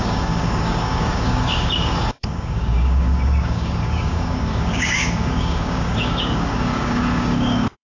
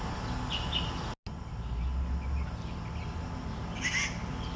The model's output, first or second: first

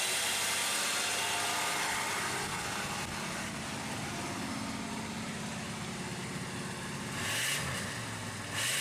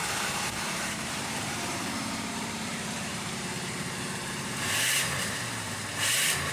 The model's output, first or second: second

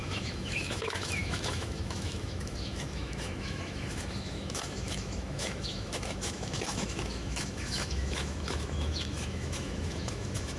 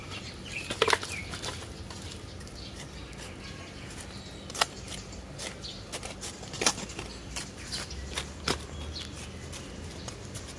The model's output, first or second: first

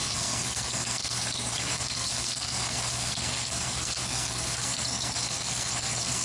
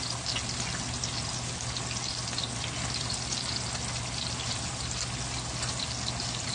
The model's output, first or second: first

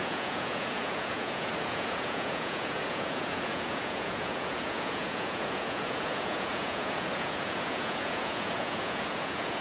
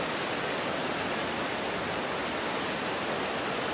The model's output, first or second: first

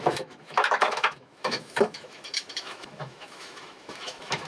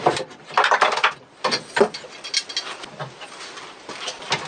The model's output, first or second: first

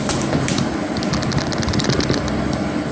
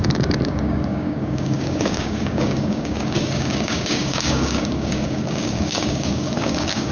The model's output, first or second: second